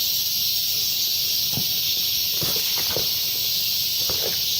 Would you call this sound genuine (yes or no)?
yes